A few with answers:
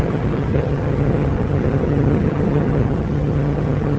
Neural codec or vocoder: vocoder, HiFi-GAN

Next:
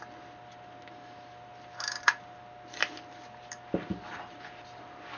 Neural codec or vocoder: none